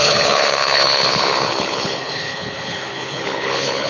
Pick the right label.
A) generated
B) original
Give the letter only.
A